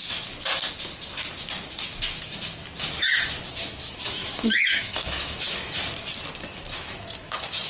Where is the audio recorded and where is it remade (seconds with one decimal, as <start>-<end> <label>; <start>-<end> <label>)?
0.0-3.5 recorded; 3.5-5.8 remade; 5.8-6.5 recorded; 6.5-7.7 remade